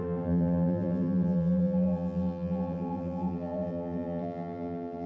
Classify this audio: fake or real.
fake